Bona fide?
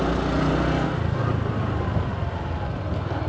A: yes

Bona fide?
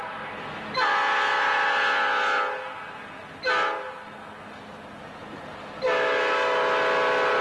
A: yes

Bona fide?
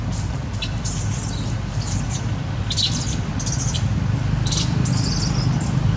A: yes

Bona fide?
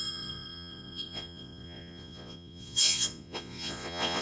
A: no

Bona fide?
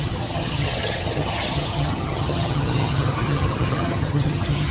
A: no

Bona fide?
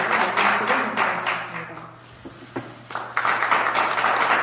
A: yes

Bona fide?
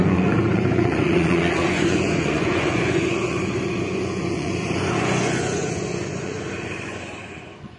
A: no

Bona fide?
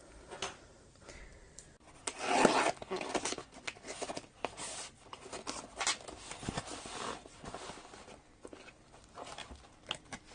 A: yes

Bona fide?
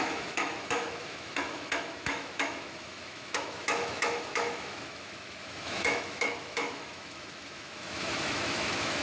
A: no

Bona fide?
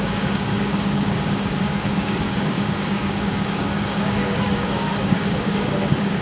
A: no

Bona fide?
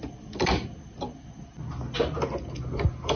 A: yes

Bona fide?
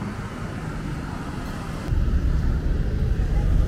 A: yes